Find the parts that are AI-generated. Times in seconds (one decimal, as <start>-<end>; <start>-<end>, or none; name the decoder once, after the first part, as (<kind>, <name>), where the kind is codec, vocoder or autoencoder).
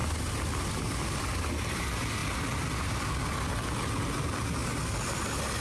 none